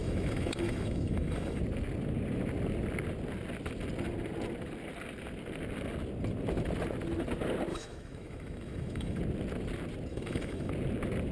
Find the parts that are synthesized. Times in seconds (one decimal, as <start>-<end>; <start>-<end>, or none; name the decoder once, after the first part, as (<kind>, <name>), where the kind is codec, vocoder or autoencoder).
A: 0.0-1.6 (autoencoder, DAC-VAE); 7.7-9.2; 10.1-10.7